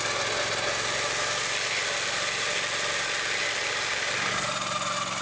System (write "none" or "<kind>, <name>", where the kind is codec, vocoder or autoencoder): none